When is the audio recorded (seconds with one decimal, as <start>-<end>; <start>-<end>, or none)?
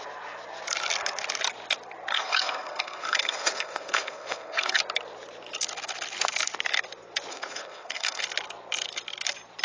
0.0-2.1; 4.8-7.3; 8.2-9.6